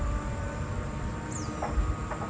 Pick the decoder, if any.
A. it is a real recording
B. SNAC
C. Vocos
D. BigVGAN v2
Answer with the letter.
A